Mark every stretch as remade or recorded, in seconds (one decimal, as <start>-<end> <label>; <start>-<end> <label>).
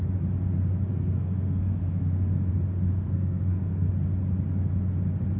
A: 0.0-0.9 recorded; 0.9-2.5 remade; 2.5-2.9 recorded; 2.9-3.9 remade; 3.9-5.4 recorded